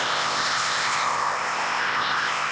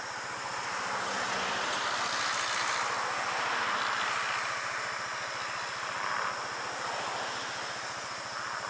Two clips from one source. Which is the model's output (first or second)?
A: first